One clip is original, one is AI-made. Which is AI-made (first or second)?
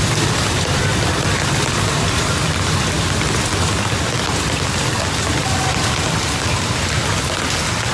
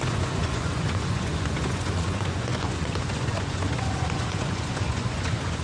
second